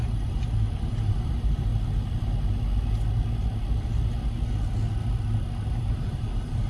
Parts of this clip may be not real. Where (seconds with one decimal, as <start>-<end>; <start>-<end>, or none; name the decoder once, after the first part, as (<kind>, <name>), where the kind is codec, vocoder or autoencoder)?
0.0-1.7 (vocoder, BigVGAN v2); 5.7-6.7